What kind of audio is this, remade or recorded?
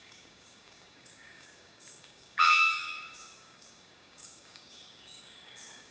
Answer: remade